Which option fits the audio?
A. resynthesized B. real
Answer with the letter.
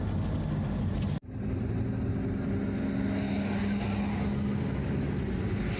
B